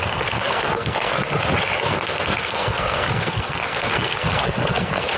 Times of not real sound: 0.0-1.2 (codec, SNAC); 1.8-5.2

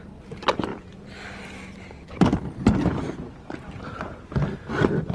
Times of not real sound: none

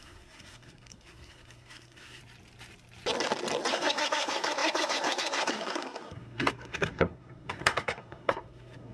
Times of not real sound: 0.0-2.2 (codec, SNAC); 3.7-8.9

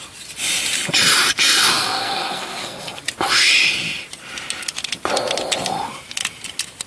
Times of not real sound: 1.7-3.0 (codec, SNAC)

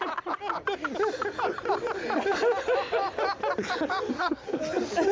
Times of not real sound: 4.1-4.6 (codec, SNAC)

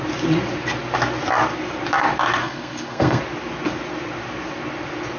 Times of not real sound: 2.4-3.2 (codec, SNAC)

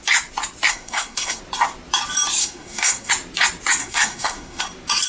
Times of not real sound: 0.7-1.4 (codec, SNAC); 2.4-3.1; 3.8-4.6